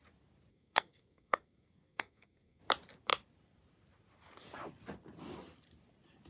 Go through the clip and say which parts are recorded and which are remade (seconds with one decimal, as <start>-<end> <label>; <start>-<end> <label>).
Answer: 0.0-0.5 recorded; 0.5-2.6 remade; 2.6-6.3 recorded